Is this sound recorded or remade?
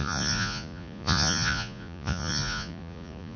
remade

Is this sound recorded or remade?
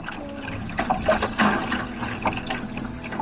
recorded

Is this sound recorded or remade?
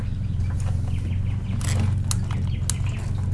recorded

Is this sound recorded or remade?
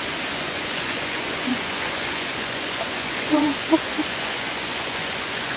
remade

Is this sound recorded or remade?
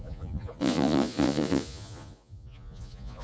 remade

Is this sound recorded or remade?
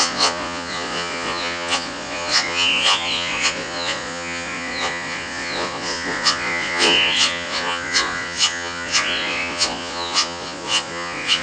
remade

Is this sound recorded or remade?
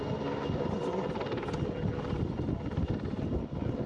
recorded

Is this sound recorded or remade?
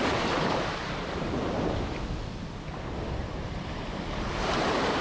recorded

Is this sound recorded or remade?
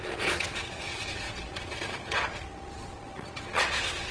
remade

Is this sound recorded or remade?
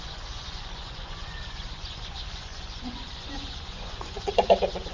remade